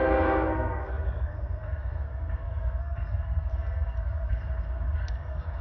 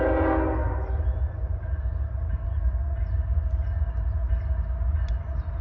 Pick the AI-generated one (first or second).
first